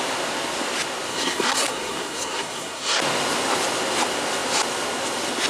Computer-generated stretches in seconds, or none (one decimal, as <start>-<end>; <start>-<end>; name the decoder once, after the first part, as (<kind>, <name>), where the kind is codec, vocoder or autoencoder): 1.1-3.0 (codec, SNAC)